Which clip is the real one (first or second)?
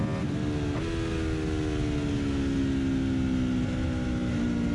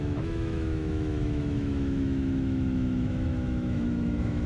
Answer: first